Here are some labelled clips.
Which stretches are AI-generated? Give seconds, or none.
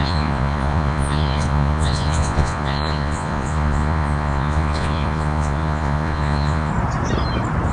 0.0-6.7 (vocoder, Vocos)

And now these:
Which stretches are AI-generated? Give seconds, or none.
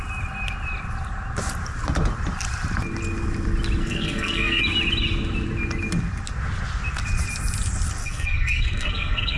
3.8-4.6 (codec, SNAC); 8.0-9.4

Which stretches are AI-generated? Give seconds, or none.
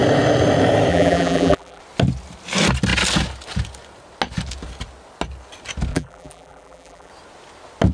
0.9-1.8 (vocoder, BigVGAN v2); 5.9-7.1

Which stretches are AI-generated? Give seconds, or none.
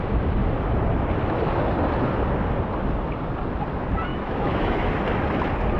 4.1-4.9 (autoencoder, DAC-VAE)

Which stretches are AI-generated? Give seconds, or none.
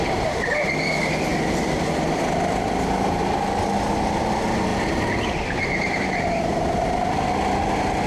none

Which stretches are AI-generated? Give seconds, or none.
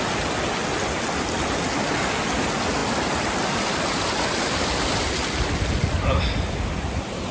none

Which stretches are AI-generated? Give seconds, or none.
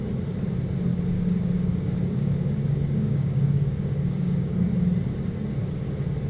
0.9-4.7 (codec, DAC)